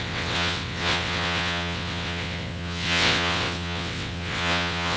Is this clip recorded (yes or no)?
no